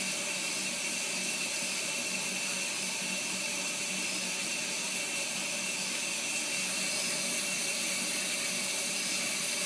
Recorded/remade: recorded